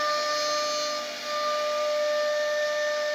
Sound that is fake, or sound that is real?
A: real